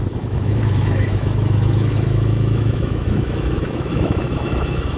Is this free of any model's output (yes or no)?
no